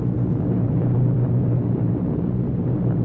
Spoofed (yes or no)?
yes